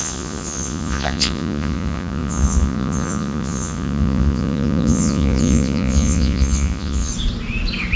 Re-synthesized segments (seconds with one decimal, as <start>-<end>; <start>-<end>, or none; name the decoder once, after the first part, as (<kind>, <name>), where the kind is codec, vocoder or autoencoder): 0.0-7.1 (vocoder, Vocos)